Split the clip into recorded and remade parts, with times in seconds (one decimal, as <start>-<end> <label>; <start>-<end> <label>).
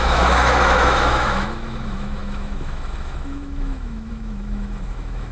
0.0-5.3 remade